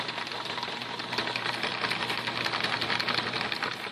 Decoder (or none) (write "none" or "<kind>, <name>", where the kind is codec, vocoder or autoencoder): vocoder, BigVGAN v2